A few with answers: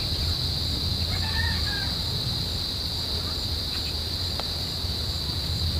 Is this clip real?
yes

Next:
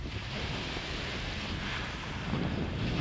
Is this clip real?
yes